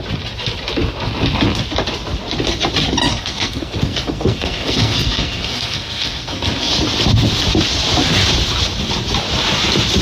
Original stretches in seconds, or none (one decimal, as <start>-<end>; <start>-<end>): 0.0-3.1; 6.7-10.0